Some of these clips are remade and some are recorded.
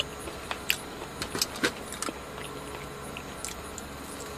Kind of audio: recorded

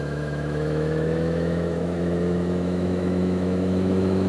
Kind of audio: remade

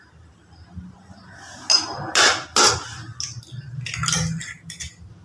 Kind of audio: recorded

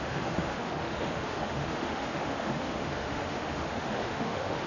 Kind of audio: remade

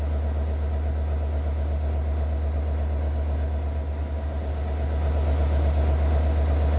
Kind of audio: recorded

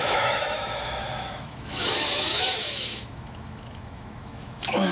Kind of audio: remade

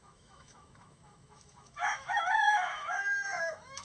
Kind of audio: remade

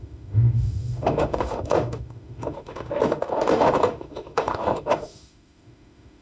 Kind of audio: remade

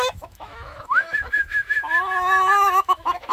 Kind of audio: remade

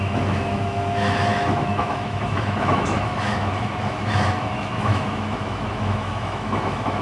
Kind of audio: remade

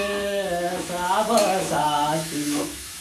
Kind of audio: remade